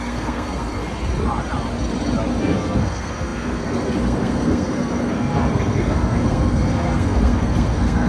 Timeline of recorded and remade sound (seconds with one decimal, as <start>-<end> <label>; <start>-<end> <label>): 0.0-0.8 remade; 0.8-2.3 recorded; 2.3-8.1 remade